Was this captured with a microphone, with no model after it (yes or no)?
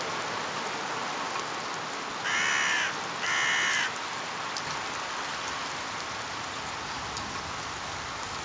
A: yes